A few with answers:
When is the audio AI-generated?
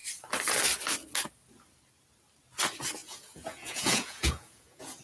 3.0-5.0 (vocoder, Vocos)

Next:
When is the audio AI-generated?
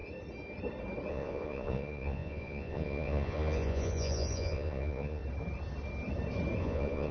1.1-5.2 (vocoder, Vocos); 6.6-7.1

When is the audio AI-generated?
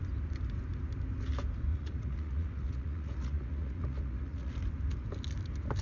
1.7-4.5 (vocoder, Vocos)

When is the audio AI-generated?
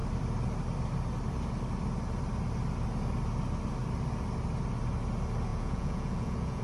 5.5-6.6 (vocoder, Vocos)